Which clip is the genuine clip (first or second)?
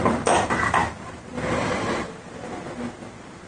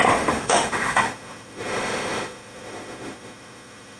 first